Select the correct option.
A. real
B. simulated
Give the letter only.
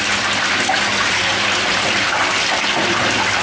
A